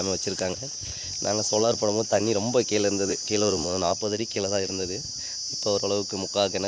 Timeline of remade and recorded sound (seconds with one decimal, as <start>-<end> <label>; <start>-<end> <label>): 0.0-1.6 recorded; 1.6-2.2 remade; 2.2-3.1 recorded; 3.1-4.7 remade; 4.7-6.7 recorded